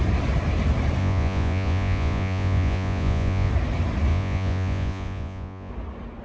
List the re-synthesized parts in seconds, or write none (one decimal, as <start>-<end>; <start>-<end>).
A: 1.0-3.5; 4.1-5.7